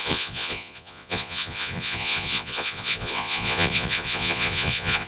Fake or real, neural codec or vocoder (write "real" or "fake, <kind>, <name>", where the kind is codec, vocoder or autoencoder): fake, vocoder, Vocos